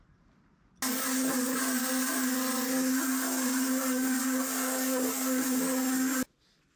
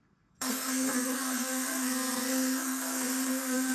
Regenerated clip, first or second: second